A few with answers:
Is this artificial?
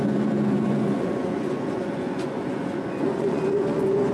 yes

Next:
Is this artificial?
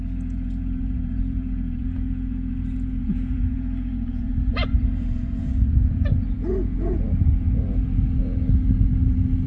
yes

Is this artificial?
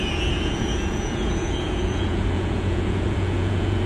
yes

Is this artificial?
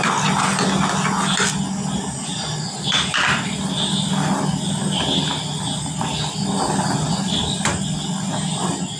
no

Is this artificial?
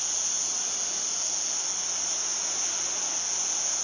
no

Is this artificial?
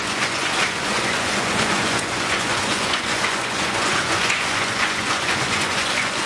yes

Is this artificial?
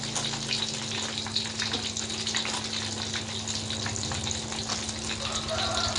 no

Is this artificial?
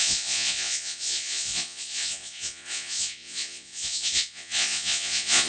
yes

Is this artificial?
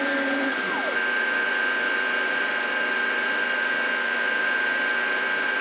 no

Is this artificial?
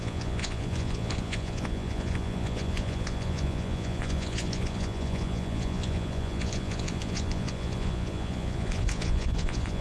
yes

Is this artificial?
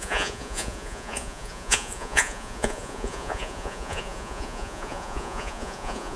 yes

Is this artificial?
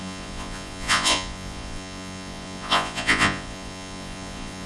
yes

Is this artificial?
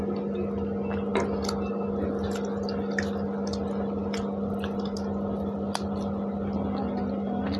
no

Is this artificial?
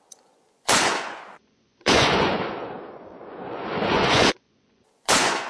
yes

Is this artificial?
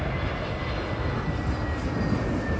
no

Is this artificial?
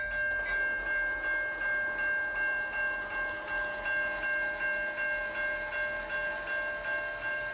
no